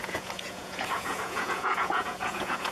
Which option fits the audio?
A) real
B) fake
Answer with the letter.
B